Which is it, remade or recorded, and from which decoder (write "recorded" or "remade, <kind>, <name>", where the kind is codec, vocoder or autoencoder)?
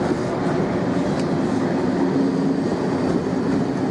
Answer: recorded